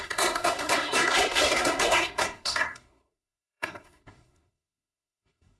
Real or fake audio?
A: fake